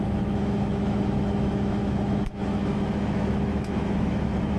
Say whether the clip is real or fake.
fake